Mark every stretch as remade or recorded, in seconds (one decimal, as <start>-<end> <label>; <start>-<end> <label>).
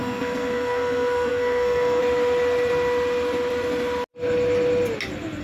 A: 0.0-2.0 remade; 2.0-5.4 recorded